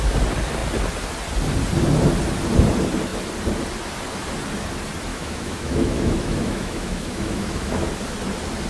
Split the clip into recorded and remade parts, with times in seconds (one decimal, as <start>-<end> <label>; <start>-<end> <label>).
0.0-5.1 recorded; 5.1-7.9 remade; 7.9-8.7 recorded